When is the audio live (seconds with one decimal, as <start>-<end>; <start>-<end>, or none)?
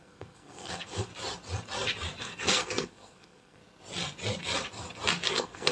1.1-2.2; 3.6-5.3